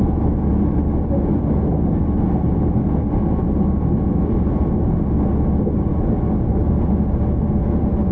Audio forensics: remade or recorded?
recorded